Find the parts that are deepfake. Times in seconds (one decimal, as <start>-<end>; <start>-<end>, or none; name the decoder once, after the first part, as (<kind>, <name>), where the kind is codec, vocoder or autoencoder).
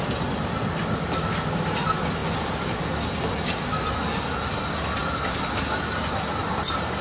6.4-7.0 (vocoder, BigVGAN v2)